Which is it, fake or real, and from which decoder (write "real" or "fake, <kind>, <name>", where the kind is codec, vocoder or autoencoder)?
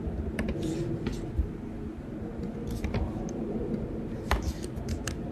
real